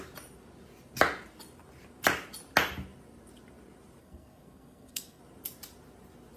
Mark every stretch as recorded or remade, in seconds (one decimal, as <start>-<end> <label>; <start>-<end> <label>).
0.0-4.0 recorded; 4.0-5.2 remade; 5.2-6.4 recorded